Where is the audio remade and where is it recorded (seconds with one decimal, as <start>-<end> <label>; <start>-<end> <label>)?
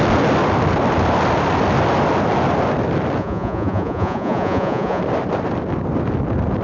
0.0-3.2 recorded; 3.2-5.0 remade; 5.0-6.6 recorded